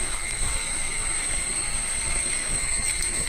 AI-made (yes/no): yes